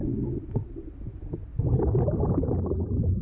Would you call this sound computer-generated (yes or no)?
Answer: no